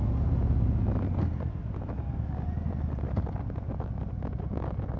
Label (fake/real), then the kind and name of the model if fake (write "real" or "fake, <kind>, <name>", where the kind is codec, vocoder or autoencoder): real